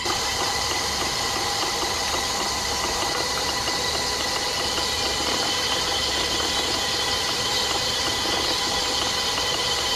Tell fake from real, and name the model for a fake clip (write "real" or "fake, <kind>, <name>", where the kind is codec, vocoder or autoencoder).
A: real